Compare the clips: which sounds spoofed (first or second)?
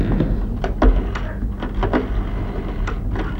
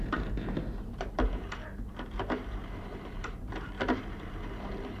second